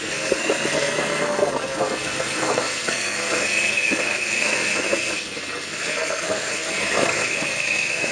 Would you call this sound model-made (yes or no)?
yes